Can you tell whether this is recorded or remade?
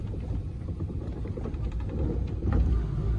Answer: recorded